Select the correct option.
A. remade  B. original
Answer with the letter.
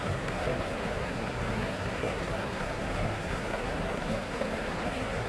A